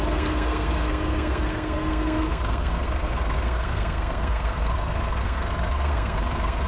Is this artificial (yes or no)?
yes